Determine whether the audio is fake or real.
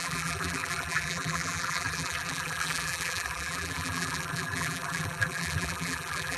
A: fake